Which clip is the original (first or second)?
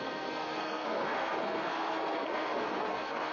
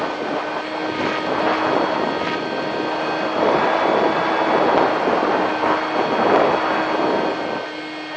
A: second